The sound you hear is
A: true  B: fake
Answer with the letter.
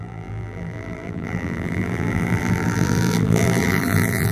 B